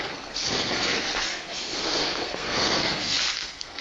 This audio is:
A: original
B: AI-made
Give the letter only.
B